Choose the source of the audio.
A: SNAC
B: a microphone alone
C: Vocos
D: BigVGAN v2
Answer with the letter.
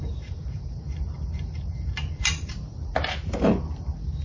D